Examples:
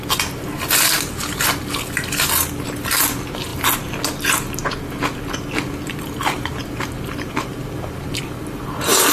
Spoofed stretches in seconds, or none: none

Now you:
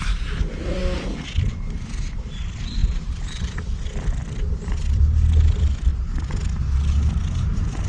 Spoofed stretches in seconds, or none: 0.0-0.8 (vocoder, BigVGAN v2); 1.5-5.9; 6.6-7.9